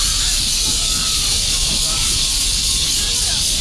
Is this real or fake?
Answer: fake